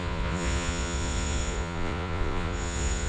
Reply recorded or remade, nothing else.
remade